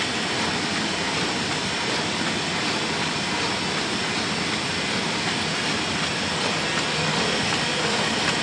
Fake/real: real